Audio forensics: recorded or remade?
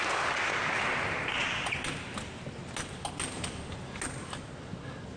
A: recorded